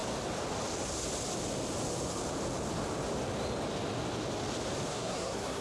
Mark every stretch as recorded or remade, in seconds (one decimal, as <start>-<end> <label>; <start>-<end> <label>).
0.0-4.9 recorded; 4.9-5.6 remade